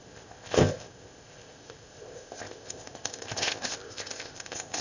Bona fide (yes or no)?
no